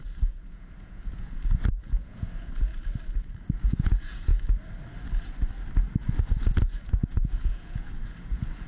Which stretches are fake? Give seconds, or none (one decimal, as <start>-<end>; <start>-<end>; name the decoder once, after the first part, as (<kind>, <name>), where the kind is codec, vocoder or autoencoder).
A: 0.0-2.7 (vocoder, Vocos); 3.4-4.3; 6.2-8.7